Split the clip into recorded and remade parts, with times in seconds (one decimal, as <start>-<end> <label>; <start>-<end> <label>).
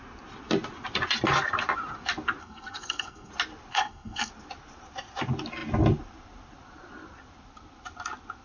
0.0-2.4 recorded; 2.4-3.3 remade; 3.3-3.7 recorded; 3.7-4.3 remade; 4.3-8.4 recorded